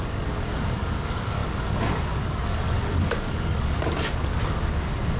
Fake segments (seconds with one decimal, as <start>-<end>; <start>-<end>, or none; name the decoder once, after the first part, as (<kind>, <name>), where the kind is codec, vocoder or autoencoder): 0.0-5.2 (codec, DAC)